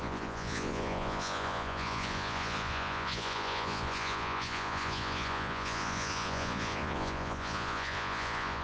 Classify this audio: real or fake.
fake